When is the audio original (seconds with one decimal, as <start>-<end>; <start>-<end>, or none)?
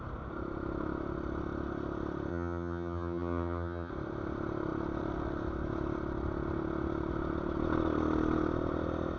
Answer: 0.0-2.3; 3.9-9.2